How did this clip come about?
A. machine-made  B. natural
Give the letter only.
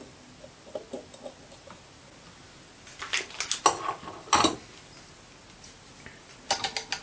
B